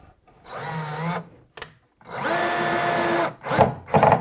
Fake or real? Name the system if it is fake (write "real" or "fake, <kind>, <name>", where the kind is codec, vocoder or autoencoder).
real